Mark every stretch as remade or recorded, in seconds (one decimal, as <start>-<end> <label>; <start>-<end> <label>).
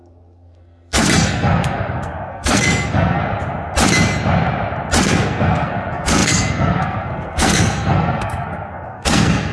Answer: 0.0-3.2 remade; 3.2-5.0 recorded; 5.0-9.5 remade